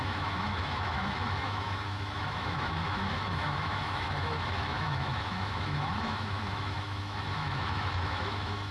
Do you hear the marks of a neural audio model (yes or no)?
yes